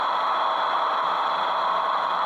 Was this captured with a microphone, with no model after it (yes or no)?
yes